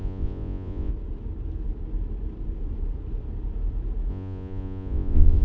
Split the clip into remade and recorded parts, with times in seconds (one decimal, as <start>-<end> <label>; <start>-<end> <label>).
0.0-0.9 remade; 0.9-4.1 recorded; 4.1-5.4 remade